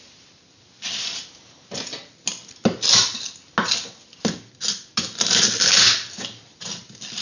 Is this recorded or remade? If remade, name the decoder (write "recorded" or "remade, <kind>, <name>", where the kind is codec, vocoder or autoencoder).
recorded